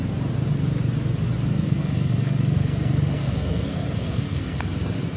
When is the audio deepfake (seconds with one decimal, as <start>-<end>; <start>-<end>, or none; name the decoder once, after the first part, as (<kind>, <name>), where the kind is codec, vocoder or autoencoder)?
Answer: 1.5-4.6 (codec, SNAC)

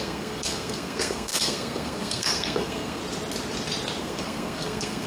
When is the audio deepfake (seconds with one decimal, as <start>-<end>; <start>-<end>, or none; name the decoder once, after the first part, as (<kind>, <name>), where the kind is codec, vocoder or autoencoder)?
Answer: 0.0-3.0 (codec, SNAC); 4.0-5.1

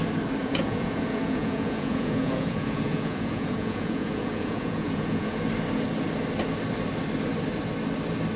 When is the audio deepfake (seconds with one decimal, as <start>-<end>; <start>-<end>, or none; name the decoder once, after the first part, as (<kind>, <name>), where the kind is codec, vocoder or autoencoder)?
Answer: 0.4-5.4 (vocoder, Vocos)

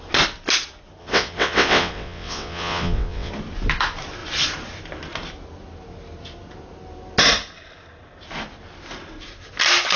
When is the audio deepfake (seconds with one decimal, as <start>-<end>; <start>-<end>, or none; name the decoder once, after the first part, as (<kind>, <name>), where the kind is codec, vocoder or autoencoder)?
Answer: 1.0-3.3 (vocoder, WaveNeXt)